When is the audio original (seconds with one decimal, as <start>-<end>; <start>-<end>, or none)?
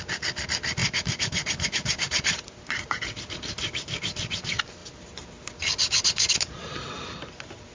0.0-0.8; 3.0-7.7